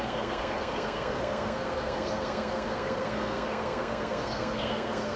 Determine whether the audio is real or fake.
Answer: fake